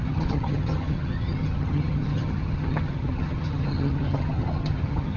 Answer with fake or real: fake